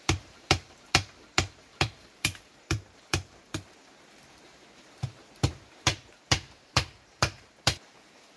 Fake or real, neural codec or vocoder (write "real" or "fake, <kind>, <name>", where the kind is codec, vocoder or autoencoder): fake, vocoder, BigVGAN v2